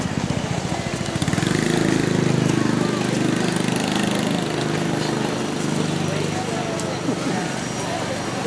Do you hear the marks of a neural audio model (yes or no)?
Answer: no